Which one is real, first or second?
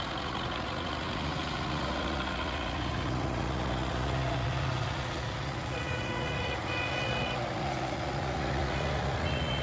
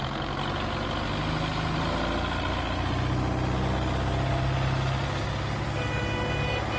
second